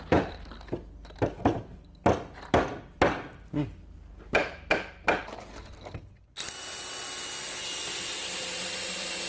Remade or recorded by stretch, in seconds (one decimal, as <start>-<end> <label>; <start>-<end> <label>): 0.0-9.3 recorded